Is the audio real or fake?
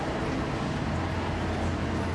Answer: real